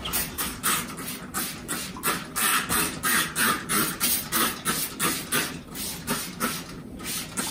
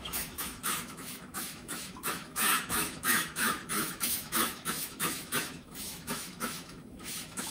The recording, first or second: first